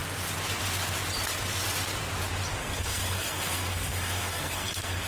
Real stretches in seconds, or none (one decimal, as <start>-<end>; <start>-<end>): 0.0-2.6